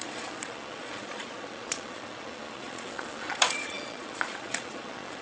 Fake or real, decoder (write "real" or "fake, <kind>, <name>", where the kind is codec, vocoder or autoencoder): fake, vocoder, Vocos